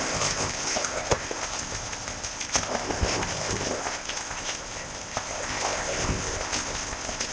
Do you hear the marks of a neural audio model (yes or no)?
yes